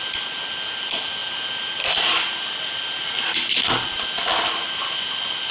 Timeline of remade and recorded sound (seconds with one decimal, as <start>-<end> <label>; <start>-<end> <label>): 0.0-5.5 recorded